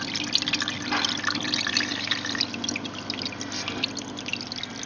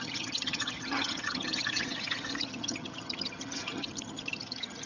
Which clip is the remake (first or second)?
second